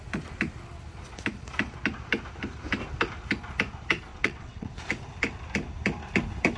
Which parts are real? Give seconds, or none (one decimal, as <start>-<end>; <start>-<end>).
0.0-4.1; 4.7-6.6